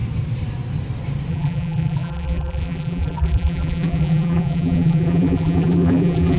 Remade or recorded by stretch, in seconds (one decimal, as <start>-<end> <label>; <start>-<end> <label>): 0.0-1.3 recorded; 1.3-6.4 remade